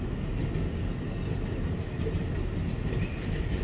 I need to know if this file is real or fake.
real